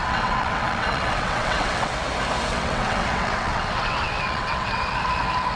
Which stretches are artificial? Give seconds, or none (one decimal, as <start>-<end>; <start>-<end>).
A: 0.0-1.9; 2.5-4.9